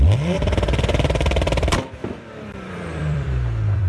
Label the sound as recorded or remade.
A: remade